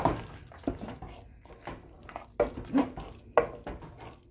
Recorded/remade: recorded